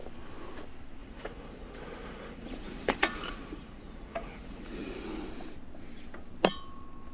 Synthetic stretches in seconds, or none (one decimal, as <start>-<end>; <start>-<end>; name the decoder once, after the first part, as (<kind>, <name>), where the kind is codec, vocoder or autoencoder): 1.0-5.3 (vocoder, Vocos)